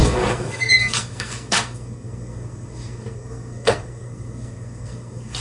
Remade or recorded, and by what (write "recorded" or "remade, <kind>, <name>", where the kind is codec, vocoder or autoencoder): remade, codec, SNAC